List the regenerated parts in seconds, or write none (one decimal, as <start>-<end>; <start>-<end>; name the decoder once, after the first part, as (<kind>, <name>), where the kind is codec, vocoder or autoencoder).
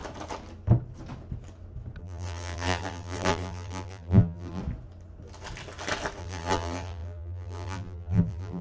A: 2.0-4.6 (vocoder, BigVGAN v2); 6.2-8.6